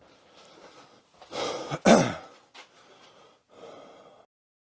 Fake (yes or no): no